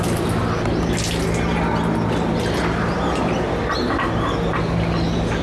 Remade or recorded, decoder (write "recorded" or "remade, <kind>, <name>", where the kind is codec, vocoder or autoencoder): recorded